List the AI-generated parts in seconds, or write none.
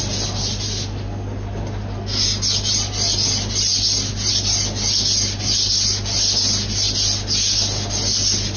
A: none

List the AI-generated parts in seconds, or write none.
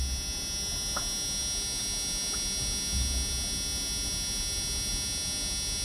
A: none